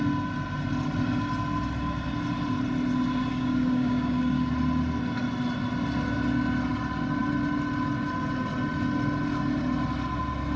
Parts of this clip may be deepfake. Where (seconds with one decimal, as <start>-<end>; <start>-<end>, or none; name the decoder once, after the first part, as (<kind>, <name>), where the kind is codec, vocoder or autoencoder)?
3.3-4.5 (codec, DAC)